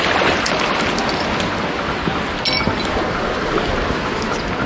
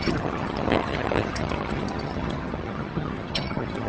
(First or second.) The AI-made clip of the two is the second